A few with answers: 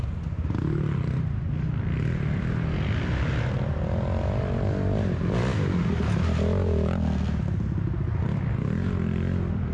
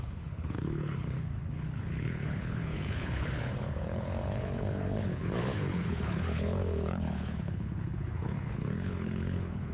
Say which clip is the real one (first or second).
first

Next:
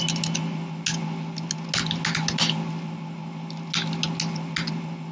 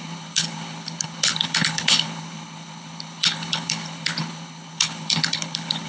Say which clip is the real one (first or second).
first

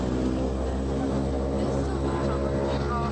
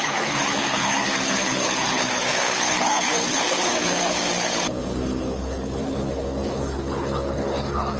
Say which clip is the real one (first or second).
first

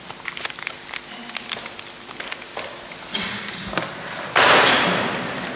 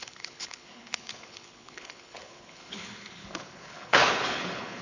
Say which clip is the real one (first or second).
first